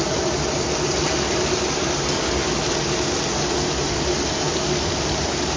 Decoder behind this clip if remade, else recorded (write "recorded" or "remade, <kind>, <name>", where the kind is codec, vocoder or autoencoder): recorded